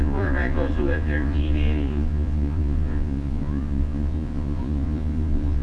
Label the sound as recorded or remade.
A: remade